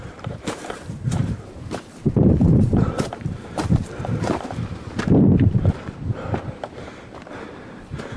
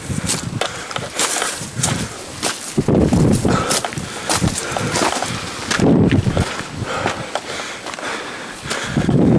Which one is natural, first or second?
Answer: second